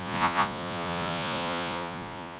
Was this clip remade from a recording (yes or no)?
yes